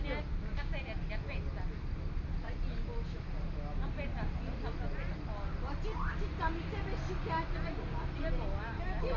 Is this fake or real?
real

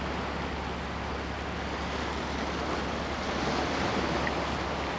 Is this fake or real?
real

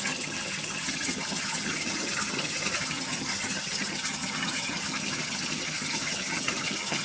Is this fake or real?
fake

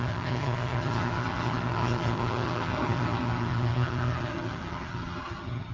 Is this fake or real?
fake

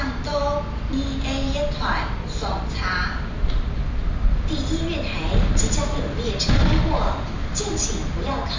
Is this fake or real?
real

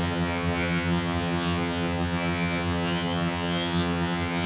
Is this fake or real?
fake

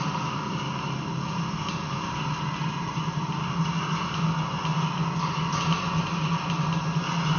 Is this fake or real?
real